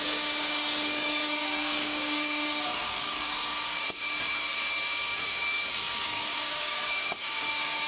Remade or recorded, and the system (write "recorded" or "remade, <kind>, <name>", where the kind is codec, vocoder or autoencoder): remade, codec, DAC